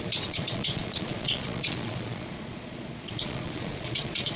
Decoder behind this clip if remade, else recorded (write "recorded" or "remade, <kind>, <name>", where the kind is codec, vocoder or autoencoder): remade, vocoder, Vocos